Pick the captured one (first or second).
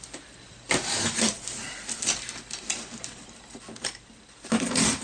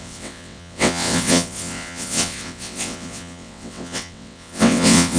first